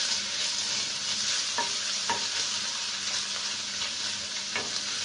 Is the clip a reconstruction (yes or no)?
no